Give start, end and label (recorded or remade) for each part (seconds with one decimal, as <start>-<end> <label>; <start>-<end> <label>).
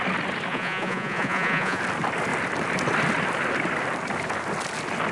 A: 0.0-0.5 recorded; 0.5-1.8 remade; 1.8-5.1 recorded